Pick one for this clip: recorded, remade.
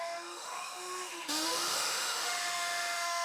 remade